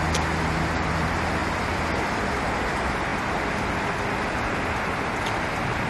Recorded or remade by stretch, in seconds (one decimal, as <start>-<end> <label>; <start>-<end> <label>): 0.0-5.9 recorded